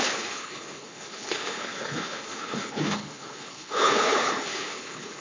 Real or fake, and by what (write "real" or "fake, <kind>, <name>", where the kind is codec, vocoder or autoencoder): fake, codec, HILCodec